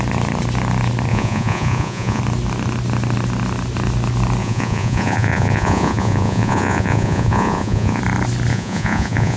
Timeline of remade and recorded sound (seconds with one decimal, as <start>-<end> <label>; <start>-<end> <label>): 0.0-1.1 recorded; 1.1-2.2 remade; 2.2-4.4 recorded; 4.4-8.0 remade; 8.0-8.5 recorded; 8.5-9.4 remade